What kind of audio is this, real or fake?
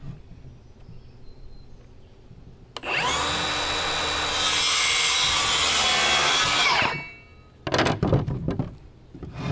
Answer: real